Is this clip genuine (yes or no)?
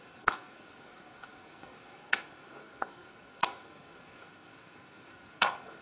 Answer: no